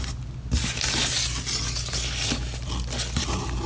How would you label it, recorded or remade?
recorded